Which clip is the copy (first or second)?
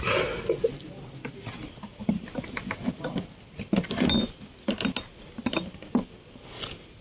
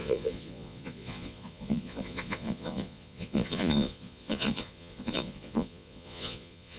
second